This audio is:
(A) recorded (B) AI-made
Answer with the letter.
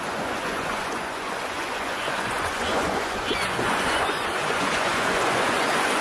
B